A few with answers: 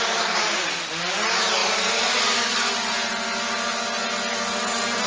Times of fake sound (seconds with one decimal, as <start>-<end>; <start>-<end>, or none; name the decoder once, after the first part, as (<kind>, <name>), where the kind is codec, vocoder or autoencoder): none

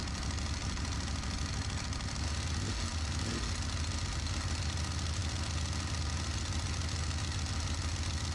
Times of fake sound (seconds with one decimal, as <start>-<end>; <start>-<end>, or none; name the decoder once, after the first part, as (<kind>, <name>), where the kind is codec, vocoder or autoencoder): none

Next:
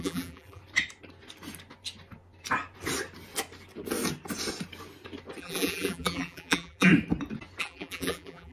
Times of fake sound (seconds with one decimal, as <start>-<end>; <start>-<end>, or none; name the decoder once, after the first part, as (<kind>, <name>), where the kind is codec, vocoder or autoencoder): 0.0-0.6 (vocoder, BigVGAN v2); 5.4-6.9; 7.6-8.5